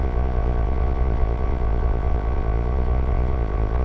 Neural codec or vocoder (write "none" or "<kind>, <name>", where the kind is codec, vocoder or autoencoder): vocoder, Vocos